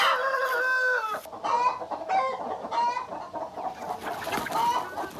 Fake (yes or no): no